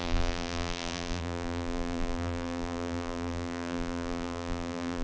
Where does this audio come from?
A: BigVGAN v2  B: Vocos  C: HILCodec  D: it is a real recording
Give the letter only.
A